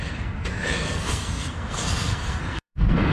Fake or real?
fake